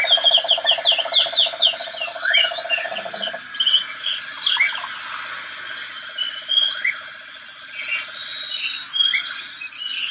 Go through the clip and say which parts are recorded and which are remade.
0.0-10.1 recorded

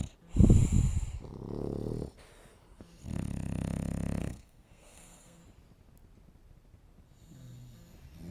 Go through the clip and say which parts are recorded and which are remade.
0.0-4.2 recorded; 4.2-5.4 remade; 5.4-8.3 recorded

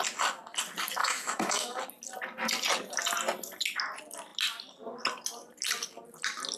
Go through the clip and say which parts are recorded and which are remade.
0.0-1.0 recorded; 1.0-1.8 remade; 1.8-6.6 recorded